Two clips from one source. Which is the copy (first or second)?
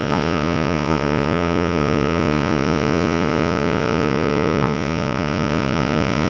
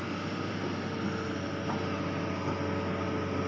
first